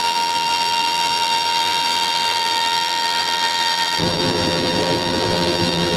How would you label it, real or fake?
fake